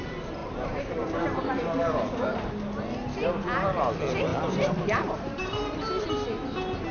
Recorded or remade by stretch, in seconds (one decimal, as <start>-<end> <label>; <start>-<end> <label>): 0.0-0.4 recorded; 0.4-2.5 remade; 2.5-4.3 recorded; 4.3-6.0 remade; 6.0-6.9 recorded